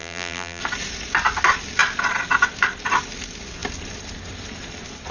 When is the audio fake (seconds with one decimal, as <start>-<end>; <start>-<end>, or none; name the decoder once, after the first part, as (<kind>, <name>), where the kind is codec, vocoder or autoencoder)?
0.0-0.6 (vocoder, BigVGAN v2)